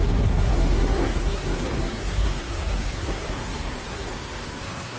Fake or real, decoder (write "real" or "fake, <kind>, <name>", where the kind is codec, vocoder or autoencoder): fake, codec, SNAC